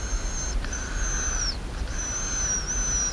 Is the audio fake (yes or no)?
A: no